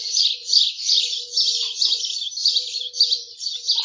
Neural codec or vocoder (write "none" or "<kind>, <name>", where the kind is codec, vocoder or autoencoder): none